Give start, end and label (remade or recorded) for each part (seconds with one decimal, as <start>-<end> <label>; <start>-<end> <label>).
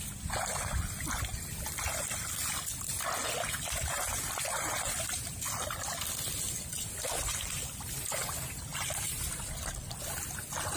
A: 0.0-8.7 recorded; 8.7-9.3 remade; 9.3-10.8 recorded